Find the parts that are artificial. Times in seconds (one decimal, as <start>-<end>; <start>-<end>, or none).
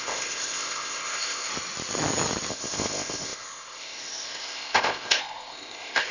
0.0-1.5; 2.5-6.1